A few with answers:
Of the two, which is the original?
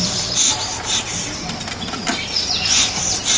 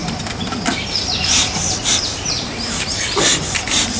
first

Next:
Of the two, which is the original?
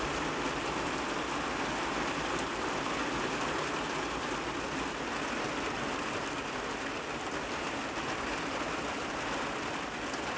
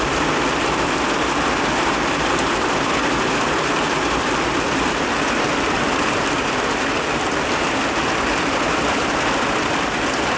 first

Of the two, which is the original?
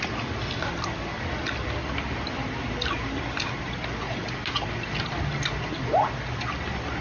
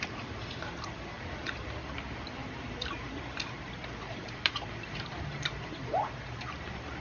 first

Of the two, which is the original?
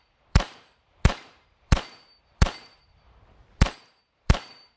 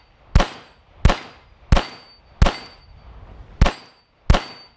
second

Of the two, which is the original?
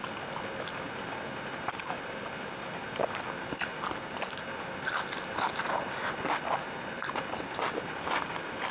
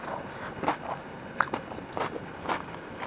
first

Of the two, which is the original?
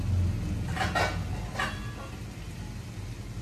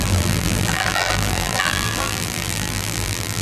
first